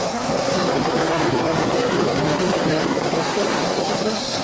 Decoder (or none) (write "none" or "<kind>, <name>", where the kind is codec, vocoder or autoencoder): codec, SNAC